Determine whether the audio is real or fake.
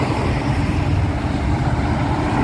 real